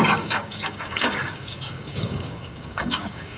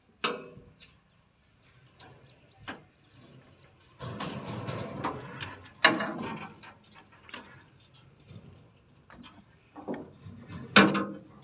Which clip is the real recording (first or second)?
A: second